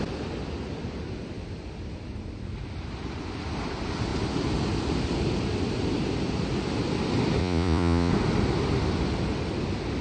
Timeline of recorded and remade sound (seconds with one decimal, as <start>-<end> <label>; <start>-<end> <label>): 0.0-7.4 recorded; 7.4-8.1 remade; 8.1-10.0 recorded